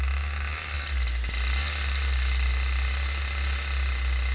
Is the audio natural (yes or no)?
yes